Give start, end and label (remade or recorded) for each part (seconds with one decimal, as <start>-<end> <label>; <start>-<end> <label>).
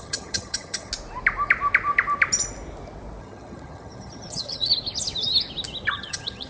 0.0-0.9 remade; 0.9-3.2 recorded; 3.2-4.7 remade; 4.7-5.9 recorded; 5.9-6.5 remade